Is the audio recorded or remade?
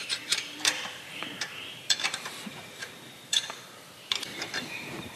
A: remade